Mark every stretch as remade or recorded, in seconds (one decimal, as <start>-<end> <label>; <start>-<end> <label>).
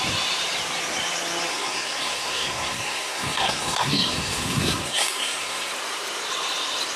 0.0-1.5 recorded; 1.5-5.7 remade; 5.7-7.0 recorded